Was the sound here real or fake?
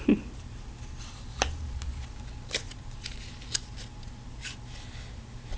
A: real